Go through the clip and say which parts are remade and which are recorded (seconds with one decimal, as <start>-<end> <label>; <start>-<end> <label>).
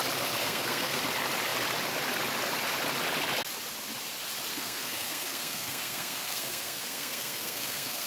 0.0-0.4 recorded; 0.4-1.0 remade; 1.0-4.5 recorded; 4.5-8.1 remade